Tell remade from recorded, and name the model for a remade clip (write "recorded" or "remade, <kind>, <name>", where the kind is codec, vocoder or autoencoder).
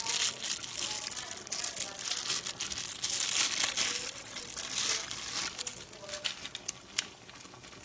recorded